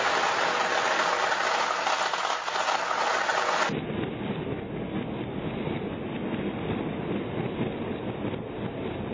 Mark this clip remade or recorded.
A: recorded